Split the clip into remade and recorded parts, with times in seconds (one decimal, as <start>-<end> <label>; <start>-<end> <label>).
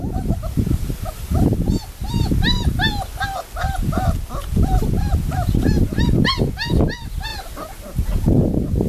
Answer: 0.0-8.9 recorded